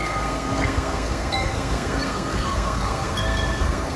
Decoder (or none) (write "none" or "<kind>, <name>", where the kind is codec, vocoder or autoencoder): codec, SNAC